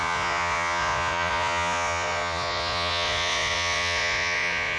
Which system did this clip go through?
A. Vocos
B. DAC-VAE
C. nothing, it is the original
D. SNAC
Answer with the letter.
A